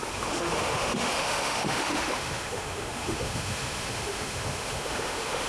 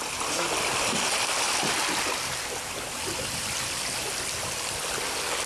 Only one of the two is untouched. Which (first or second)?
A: second